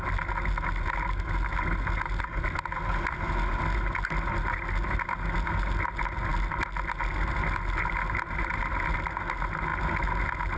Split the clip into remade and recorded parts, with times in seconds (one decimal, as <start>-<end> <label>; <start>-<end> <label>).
0.0-10.6 recorded